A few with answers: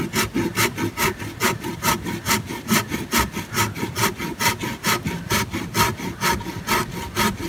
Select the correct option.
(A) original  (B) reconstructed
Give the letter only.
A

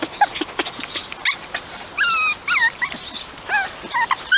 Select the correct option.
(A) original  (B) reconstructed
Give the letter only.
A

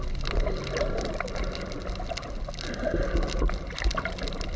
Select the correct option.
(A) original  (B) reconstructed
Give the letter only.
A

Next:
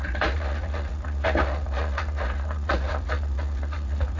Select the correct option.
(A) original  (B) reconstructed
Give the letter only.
B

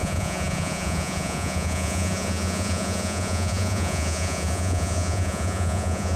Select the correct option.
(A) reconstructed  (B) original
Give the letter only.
A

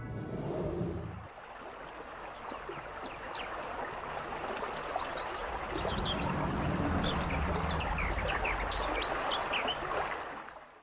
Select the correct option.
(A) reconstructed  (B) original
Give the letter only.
B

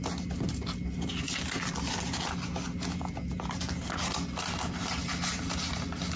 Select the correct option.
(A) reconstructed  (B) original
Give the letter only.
B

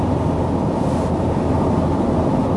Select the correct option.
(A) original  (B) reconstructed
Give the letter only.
A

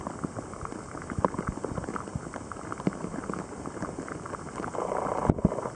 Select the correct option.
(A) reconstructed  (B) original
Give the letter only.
B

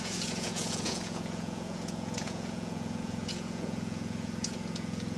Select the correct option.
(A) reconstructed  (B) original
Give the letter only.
A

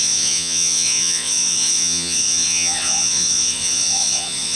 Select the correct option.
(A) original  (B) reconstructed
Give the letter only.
B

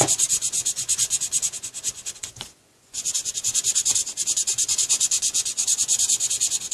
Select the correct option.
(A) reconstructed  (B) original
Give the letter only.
A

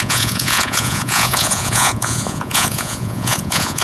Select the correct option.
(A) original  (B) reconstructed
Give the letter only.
B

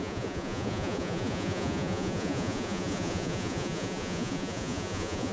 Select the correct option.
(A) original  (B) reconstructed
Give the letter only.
B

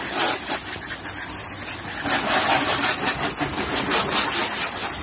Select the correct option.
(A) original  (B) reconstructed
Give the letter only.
A